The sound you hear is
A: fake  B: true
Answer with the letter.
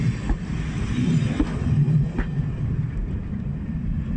B